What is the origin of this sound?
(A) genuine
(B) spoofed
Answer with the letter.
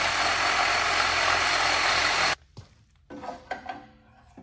A